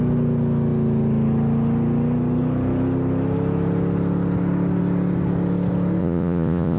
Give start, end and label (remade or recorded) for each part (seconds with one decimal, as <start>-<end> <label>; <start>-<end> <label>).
0.0-6.0 recorded; 6.0-6.8 remade